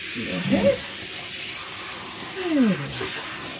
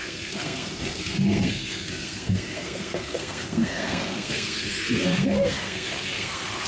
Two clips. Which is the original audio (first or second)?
first